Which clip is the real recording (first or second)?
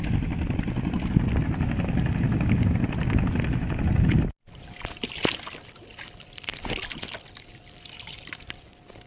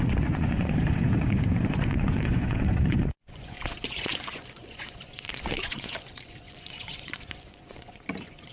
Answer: first